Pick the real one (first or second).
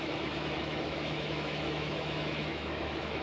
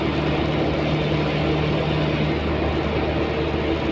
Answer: second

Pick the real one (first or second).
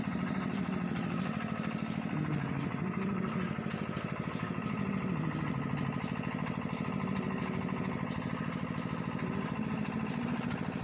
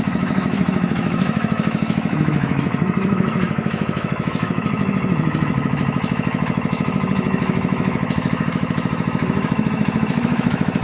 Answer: first